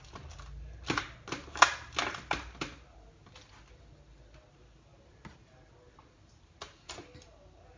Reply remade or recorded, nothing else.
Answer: recorded